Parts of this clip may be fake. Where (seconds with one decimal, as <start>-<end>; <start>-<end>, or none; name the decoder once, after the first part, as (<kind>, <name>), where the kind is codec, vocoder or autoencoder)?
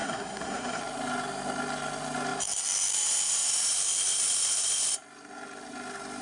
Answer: 0.0-0.8 (codec, SNAC)